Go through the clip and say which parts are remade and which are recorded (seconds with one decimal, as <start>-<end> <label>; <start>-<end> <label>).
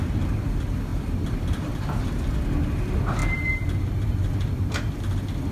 0.0-0.9 recorded; 0.9-1.7 remade; 1.7-3.2 recorded; 3.2-4.8 remade; 4.8-5.5 recorded